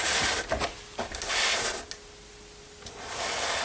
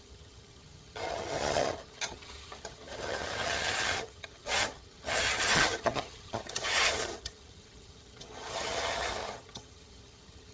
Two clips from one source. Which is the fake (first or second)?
second